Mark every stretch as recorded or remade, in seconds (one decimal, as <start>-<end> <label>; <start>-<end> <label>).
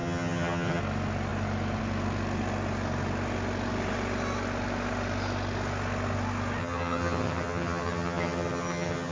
0.0-0.8 remade; 0.8-6.6 recorded; 6.6-9.1 remade